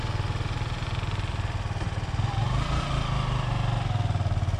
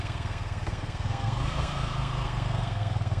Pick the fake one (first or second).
second